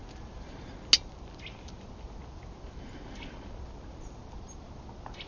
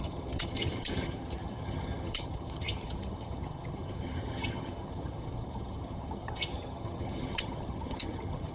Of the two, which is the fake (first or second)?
second